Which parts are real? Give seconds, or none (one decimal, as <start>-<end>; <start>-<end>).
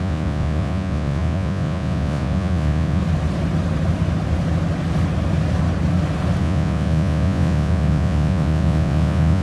3.0-6.4